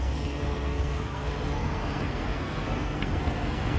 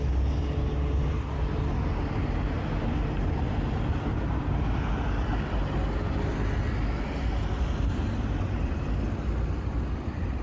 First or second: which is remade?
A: first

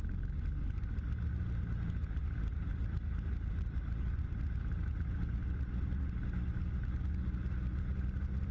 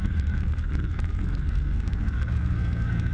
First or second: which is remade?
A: second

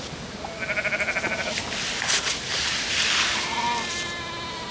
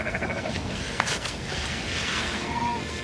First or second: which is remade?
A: second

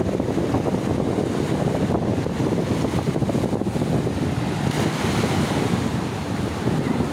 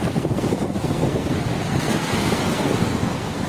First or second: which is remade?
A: second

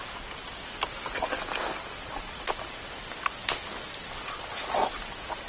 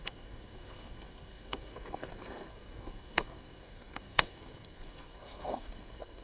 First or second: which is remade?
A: second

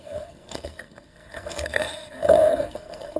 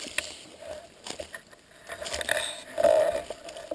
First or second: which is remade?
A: first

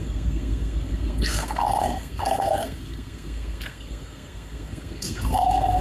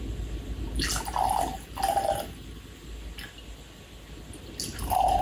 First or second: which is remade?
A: first